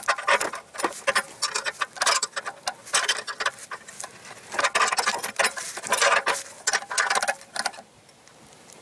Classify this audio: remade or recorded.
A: recorded